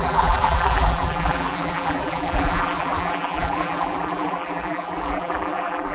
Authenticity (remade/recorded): remade